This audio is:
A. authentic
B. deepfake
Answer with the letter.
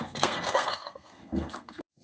B